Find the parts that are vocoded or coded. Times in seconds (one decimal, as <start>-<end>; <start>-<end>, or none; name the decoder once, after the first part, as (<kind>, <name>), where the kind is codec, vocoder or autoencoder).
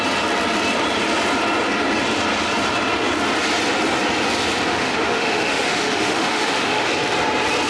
4.7-6.9 (autoencoder, DAC-VAE)